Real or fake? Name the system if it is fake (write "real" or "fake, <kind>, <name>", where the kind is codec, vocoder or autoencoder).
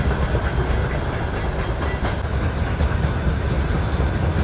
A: real